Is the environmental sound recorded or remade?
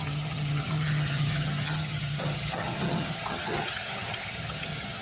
remade